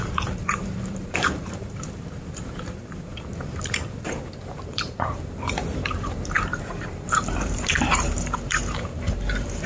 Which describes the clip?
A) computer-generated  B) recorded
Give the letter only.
A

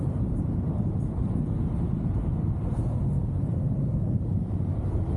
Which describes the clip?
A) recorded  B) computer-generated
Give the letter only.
B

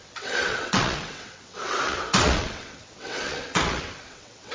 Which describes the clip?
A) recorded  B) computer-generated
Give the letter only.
B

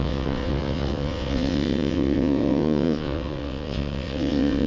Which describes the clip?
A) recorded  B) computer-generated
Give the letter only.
B